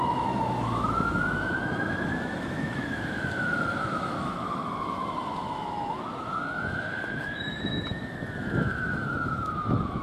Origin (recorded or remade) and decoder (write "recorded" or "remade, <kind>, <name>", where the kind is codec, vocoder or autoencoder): remade, autoencoder, DAC-VAE